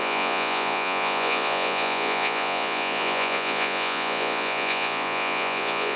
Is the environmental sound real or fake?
fake